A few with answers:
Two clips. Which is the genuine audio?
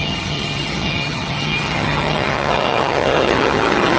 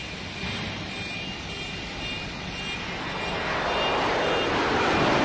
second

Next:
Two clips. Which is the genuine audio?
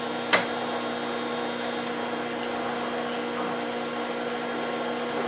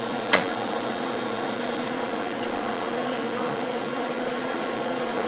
first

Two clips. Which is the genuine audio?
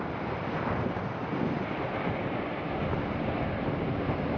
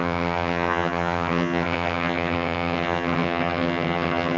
first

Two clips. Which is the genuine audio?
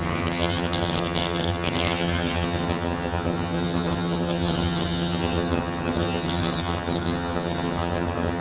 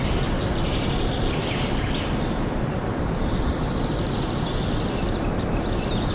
second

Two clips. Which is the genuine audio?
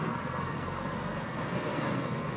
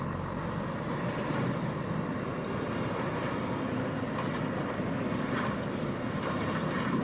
second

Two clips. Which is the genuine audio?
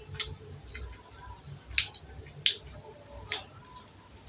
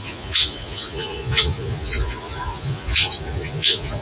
first